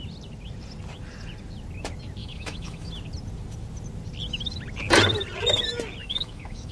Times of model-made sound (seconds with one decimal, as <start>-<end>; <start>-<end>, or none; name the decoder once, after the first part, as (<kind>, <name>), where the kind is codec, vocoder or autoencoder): 2.2-2.9 (autoencoder, DAC-VAE); 6.0-6.7